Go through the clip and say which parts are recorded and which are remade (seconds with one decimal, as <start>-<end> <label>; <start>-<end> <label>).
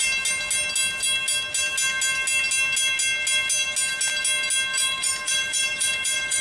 0.0-4.7 recorded; 4.7-6.4 remade